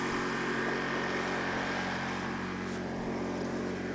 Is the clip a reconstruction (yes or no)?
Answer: no